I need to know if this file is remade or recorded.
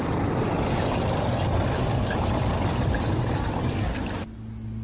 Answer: recorded